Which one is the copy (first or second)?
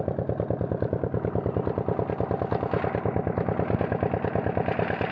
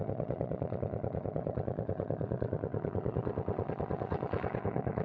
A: second